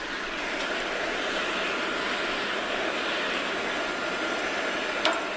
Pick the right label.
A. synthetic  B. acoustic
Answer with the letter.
B